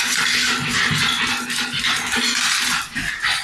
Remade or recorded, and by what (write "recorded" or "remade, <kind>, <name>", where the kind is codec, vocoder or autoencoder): recorded